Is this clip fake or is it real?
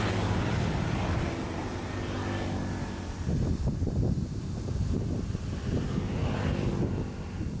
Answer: real